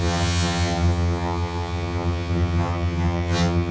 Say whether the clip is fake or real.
fake